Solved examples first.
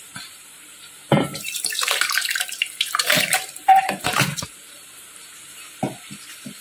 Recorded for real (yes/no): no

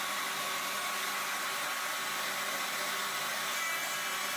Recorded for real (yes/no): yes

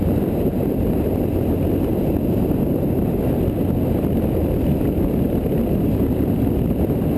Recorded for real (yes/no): yes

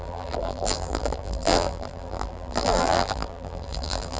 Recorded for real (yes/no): no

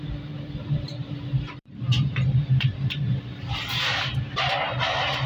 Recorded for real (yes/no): no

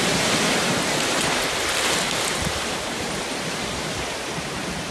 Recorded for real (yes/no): yes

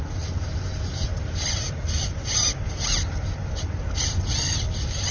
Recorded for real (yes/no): yes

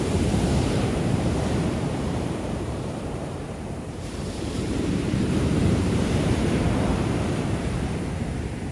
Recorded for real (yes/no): no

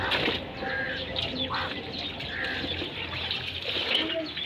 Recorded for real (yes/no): yes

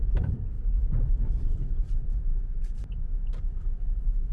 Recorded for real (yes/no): no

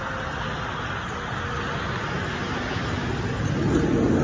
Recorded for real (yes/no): yes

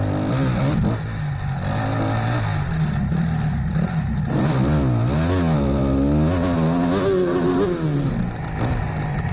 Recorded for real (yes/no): yes